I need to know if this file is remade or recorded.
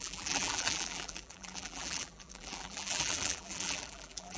remade